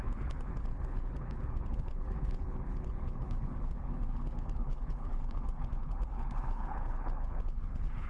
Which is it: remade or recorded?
remade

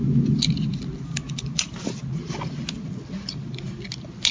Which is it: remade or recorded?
recorded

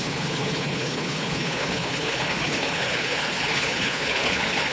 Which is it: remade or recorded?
remade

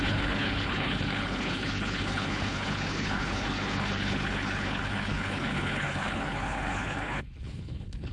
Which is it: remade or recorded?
remade